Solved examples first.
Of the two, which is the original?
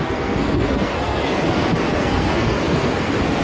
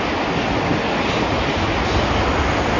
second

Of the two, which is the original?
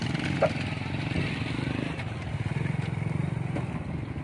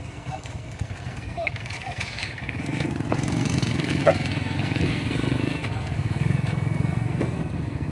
first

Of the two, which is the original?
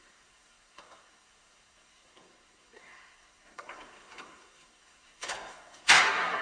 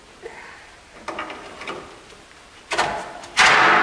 second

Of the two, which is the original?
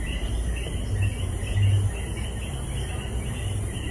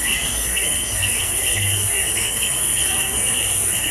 first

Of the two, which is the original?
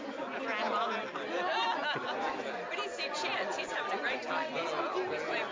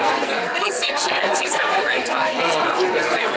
first